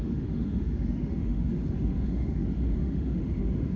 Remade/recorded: remade